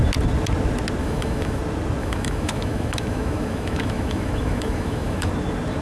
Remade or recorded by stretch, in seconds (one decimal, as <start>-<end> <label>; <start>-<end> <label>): 0.0-1.0 recorded; 1.0-1.6 remade; 1.6-2.0 recorded; 2.0-5.3 remade; 5.3-5.8 recorded